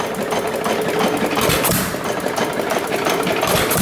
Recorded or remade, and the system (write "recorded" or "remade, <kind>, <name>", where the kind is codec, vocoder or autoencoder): recorded